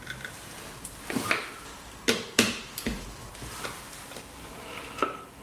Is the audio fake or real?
fake